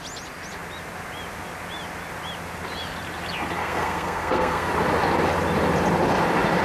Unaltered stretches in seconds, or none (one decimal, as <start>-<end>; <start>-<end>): 0.0-3.6; 4.7-6.6